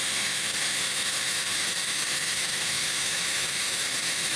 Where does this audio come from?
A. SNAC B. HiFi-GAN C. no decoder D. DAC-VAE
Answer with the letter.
D